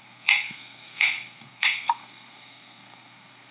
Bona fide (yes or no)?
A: no